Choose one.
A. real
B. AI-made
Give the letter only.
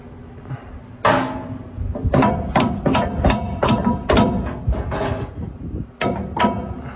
A